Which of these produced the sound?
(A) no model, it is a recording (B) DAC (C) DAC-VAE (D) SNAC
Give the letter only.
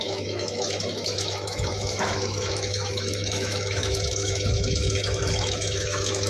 C